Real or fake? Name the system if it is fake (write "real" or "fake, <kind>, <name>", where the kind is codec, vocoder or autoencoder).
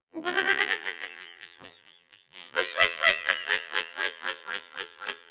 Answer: fake, vocoder, BigVGAN v2